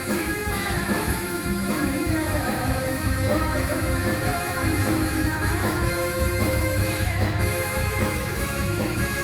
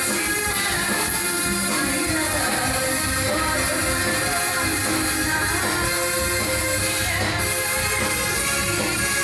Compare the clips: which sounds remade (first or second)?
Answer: first